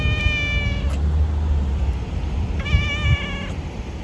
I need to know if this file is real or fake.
real